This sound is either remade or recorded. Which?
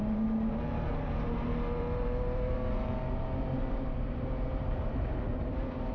remade